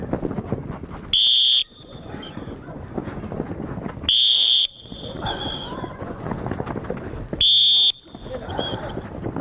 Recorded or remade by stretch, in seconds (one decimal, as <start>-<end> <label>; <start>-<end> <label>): 0.0-1.6 recorded; 1.6-3.2 remade; 3.2-4.3 recorded; 4.3-6.3 remade; 6.3-9.4 recorded